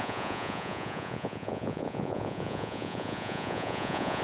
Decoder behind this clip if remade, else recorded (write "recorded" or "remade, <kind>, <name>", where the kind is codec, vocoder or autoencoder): remade, vocoder, Vocos